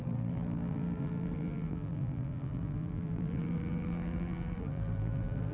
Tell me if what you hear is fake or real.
fake